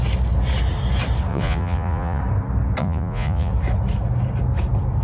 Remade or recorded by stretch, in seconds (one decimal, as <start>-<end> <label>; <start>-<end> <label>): 0.0-1.3 recorded; 1.3-2.2 remade; 2.2-2.8 recorded; 2.8-3.5 remade; 3.5-5.0 recorded